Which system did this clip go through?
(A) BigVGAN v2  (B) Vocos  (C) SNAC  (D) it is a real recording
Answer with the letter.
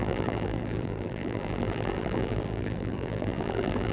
A